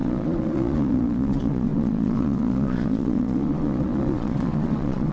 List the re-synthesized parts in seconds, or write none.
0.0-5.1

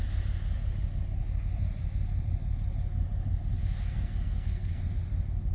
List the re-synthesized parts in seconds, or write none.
3.6-4.8

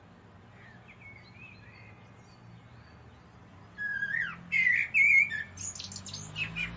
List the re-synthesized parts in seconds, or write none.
none

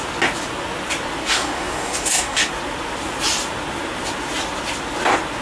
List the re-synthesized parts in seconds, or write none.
1.2-2.5

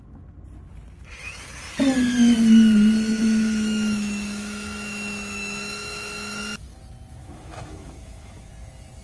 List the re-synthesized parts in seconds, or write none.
3.1-6.4; 7.2-8.5

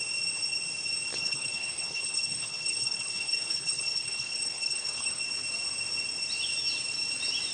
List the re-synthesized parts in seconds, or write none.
1.1-5.2

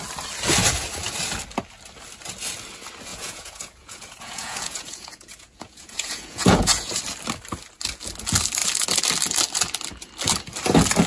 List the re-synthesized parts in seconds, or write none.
3.1-7.0